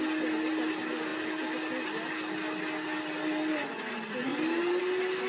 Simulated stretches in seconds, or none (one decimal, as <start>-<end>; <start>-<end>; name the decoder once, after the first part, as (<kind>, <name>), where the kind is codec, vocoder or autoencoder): none